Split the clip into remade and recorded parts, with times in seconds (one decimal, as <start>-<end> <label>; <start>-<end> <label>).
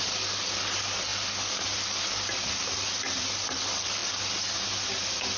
0.0-5.4 recorded